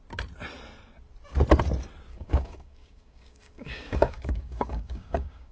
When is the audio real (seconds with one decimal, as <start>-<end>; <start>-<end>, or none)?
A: 0.0-2.1